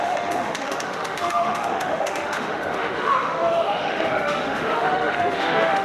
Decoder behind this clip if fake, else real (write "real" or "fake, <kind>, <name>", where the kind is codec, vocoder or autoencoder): fake, autoencoder, DAC-VAE